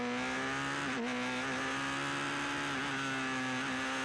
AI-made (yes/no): no